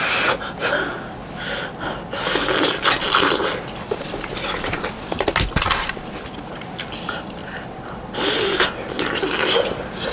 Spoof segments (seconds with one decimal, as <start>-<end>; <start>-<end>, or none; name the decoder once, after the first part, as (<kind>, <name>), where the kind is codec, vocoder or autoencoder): none